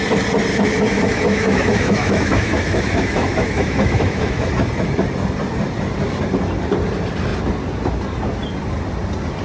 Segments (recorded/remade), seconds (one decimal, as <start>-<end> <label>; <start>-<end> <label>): 0.0-0.5 recorded; 0.5-4.5 remade; 4.5-9.4 recorded